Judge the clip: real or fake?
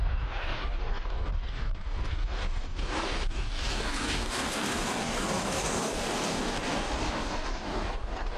fake